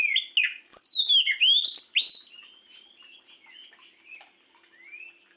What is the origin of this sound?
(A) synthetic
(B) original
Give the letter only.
B